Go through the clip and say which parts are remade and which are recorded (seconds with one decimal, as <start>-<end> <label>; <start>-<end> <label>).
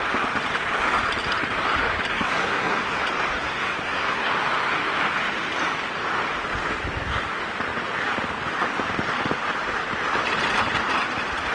0.0-2.1 recorded; 2.1-3.0 remade; 3.0-3.4 recorded; 3.4-4.3 remade; 4.3-11.5 recorded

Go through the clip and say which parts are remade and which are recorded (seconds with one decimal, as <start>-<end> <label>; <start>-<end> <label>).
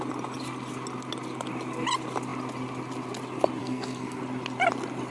0.0-3.6 recorded; 3.6-4.2 remade; 4.2-5.1 recorded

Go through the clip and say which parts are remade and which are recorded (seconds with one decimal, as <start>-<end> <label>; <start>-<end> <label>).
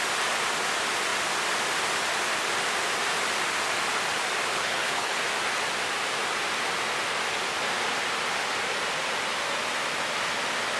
0.0-4.5 recorded; 4.5-5.2 remade; 5.2-10.8 recorded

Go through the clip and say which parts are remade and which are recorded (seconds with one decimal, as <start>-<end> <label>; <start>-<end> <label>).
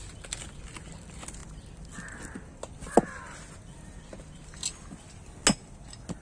0.0-6.2 recorded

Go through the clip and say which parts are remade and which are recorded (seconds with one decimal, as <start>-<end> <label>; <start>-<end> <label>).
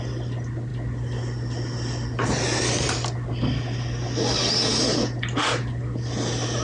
0.0-6.6 recorded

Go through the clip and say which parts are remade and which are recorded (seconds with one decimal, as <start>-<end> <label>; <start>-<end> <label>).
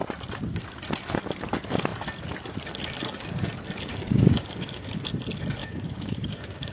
0.0-3.9 recorded; 3.9-4.9 remade; 4.9-5.6 recorded; 5.6-6.7 remade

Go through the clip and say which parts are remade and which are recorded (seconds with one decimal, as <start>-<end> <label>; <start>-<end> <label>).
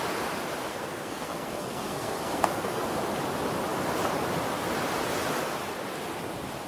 0.0-0.7 recorded; 0.7-2.8 remade; 2.8-6.7 recorded